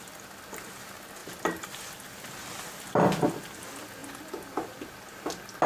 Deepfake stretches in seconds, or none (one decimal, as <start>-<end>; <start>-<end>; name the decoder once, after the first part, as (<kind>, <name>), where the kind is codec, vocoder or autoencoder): none